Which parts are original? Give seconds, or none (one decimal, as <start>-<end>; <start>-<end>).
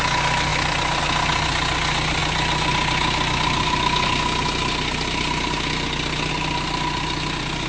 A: 0.0-7.7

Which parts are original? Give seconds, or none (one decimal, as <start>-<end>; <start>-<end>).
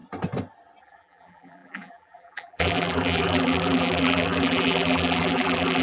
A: 0.0-0.8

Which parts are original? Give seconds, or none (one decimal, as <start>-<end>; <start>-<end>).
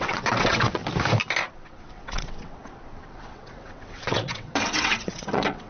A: 0.8-1.5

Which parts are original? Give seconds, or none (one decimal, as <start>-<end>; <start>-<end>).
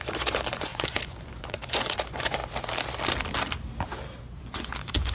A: 2.4-4.4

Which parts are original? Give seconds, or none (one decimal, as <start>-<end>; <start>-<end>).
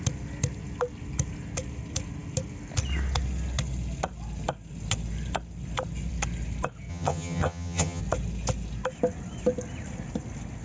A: 0.0-6.9; 8.0-10.6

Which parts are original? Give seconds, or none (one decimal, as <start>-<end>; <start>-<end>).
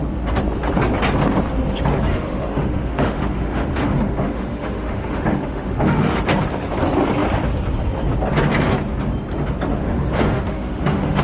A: 0.0-2.1; 6.2-9.7